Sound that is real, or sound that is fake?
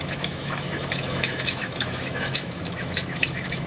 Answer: fake